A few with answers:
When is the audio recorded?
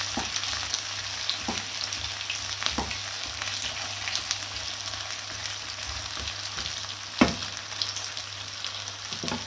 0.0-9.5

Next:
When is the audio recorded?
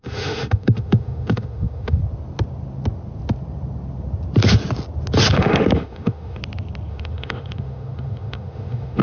2.0-5.3; 6.4-6.9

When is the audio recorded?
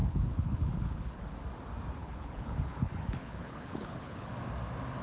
1.2-2.0; 4.3-5.0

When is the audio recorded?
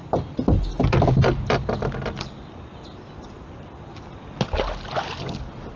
0.0-5.8